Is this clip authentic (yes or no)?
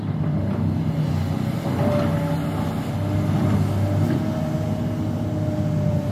yes